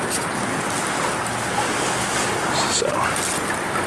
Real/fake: real